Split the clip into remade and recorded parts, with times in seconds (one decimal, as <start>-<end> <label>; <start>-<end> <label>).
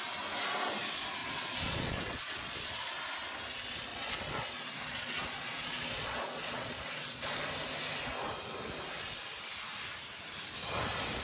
0.0-1.2 recorded; 1.2-2.9 remade; 2.9-3.9 recorded; 3.9-7.4 remade; 7.4-11.2 recorded